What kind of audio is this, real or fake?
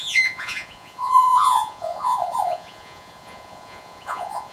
fake